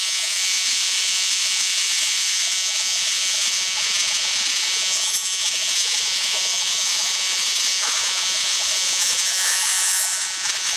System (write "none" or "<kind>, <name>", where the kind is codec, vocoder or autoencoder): vocoder, Vocos